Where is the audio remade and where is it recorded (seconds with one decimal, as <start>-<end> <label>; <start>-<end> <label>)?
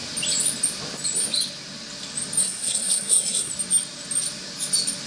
0.0-2.4 recorded; 2.4-3.5 remade; 3.5-5.1 recorded